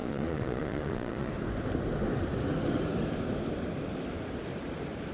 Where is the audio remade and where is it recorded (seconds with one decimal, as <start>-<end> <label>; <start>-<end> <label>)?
0.0-1.3 remade; 1.3-5.1 recorded